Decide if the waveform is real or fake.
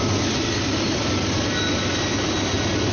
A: real